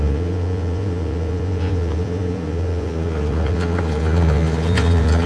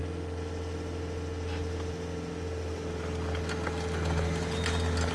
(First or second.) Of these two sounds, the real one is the second